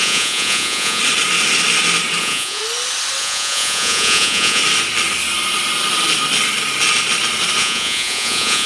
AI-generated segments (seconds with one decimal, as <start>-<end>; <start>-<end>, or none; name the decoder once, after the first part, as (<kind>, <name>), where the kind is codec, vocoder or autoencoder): 0.0-1.0 (vocoder, Vocos); 2.2-2.6; 3.2-4.6; 7.6-8.7